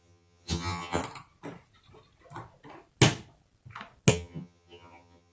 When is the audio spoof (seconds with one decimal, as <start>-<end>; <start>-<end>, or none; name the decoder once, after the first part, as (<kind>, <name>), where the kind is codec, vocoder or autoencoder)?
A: 0.0-1.0 (vocoder, HiFi-GAN); 4.1-5.3